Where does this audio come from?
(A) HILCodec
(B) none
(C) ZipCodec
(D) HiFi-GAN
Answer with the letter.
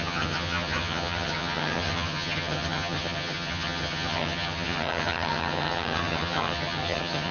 D